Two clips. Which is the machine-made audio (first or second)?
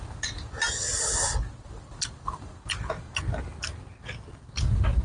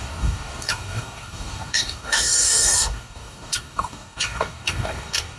second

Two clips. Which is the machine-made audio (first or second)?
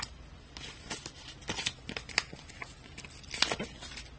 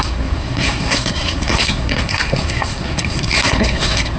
second